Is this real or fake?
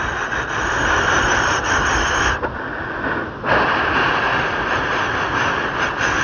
real